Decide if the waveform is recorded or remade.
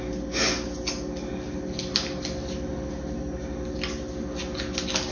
recorded